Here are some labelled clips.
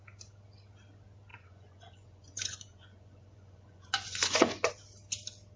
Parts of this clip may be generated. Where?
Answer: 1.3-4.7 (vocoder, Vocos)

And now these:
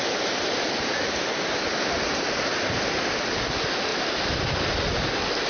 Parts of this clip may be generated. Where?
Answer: none

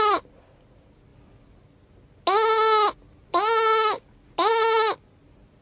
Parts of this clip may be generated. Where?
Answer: none

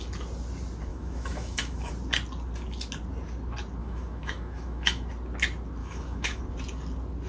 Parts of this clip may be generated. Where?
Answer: 0.9-1.9 (autoencoder, DAC-VAE); 3.8-5.1; 5.8-6.4

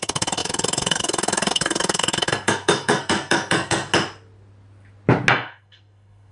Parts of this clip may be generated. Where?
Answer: 0.0-3.9 (codec, SNAC); 5.3-6.3

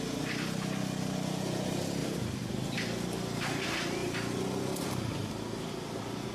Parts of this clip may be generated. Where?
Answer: 2.0-2.5 (vocoder, BigVGAN v2)